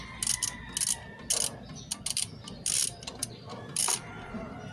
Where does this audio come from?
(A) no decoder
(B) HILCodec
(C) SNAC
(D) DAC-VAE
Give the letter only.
A